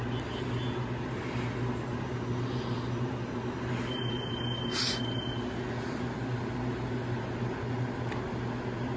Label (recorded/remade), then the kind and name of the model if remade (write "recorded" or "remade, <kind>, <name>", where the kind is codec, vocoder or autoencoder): recorded